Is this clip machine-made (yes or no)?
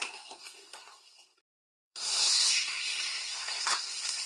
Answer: yes